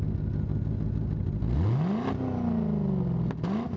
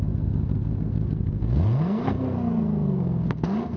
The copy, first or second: second